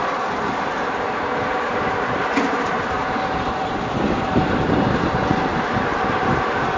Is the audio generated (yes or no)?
yes